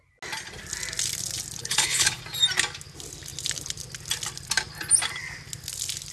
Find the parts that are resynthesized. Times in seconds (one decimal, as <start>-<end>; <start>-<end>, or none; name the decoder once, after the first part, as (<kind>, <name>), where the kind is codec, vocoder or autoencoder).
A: 1.6-2.2 (codec, HILCodec)